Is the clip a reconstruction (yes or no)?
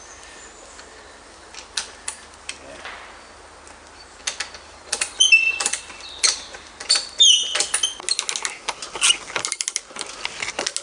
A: no